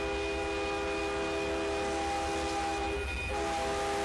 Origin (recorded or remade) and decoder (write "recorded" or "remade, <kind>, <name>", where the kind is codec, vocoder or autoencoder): recorded